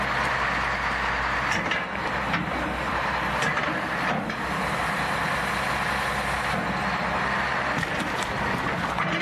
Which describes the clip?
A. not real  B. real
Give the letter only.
B